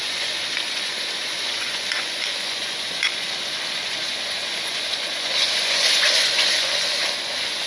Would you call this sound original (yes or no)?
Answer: no